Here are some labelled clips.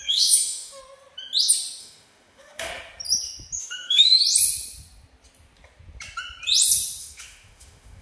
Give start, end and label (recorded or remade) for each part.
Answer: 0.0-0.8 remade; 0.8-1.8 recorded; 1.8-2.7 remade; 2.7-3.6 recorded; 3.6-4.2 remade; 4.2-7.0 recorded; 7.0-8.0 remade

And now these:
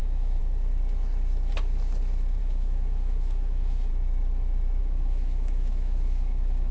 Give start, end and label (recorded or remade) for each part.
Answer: 0.0-0.4 remade; 0.4-2.4 recorded; 2.4-3.9 remade; 3.9-4.8 recorded; 4.8-6.7 remade

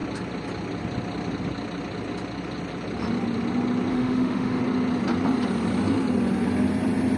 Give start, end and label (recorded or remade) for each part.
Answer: 0.0-3.9 recorded; 3.9-4.6 remade; 4.6-7.2 recorded

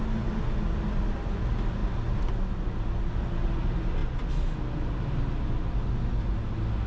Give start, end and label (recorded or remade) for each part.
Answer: 0.0-6.9 recorded

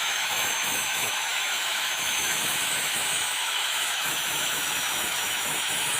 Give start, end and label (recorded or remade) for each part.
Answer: 0.0-6.0 remade

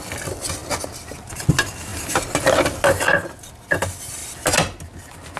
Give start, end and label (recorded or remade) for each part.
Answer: 0.0-5.4 recorded